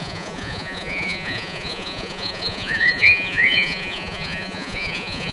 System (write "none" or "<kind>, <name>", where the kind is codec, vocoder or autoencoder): vocoder, Vocos